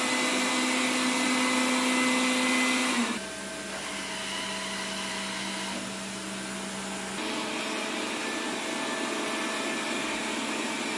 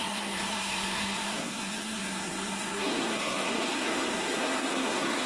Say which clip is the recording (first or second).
first